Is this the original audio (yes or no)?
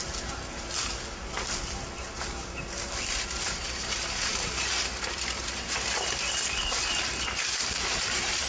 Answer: yes